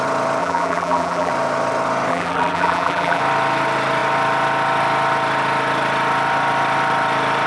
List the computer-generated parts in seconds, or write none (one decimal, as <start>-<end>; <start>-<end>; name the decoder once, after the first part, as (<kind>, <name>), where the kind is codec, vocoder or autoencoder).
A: 0.4-1.3 (vocoder, BigVGAN v2); 2.1-3.2